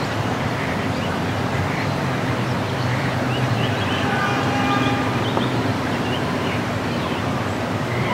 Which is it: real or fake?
fake